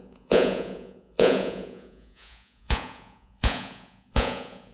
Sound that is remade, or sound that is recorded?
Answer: remade